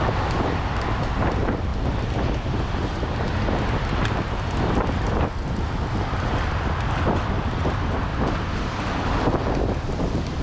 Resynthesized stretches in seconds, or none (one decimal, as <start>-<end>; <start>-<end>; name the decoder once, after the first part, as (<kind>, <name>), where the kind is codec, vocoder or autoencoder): 0.0-1.7 (vocoder, BigVGAN v2); 6.0-8.1; 9.6-10.4